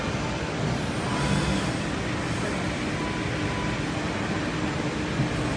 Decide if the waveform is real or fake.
real